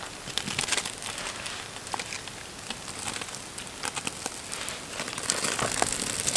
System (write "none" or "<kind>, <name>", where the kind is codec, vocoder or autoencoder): none